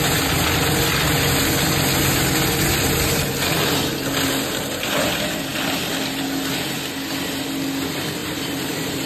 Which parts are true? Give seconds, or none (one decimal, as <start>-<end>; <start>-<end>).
0.0-2.1; 3.2-8.2